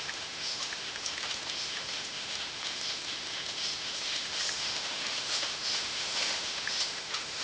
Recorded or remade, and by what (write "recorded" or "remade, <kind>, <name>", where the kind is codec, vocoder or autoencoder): remade, autoencoder, DAC-VAE